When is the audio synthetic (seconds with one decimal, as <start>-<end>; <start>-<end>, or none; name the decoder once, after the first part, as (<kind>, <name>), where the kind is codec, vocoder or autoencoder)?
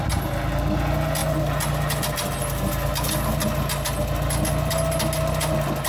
none